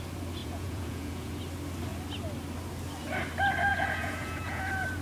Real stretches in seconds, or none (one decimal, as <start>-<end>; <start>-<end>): 0.0-0.4; 1.3-3.7; 4.6-5.0